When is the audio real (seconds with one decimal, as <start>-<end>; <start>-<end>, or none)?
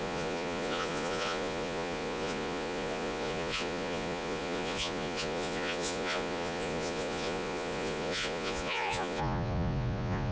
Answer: none